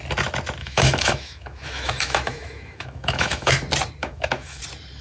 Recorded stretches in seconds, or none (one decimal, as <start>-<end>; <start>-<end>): 0.0-0.6; 3.5-4.0; 4.6-5.0